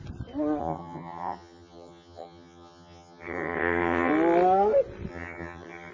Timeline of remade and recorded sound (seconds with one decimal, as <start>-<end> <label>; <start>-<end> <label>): 0.0-0.6 recorded; 0.6-4.1 remade; 4.1-5.1 recorded; 5.1-5.9 remade